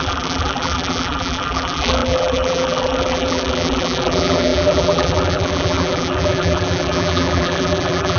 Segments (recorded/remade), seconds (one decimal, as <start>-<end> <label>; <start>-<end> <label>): 0.0-8.2 remade